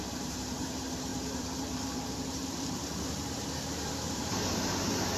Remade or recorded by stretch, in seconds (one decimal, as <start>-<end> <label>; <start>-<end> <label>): 0.0-5.2 remade